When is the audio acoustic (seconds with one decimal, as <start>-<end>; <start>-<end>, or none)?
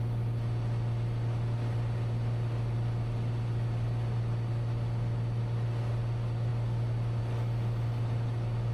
0.0-8.7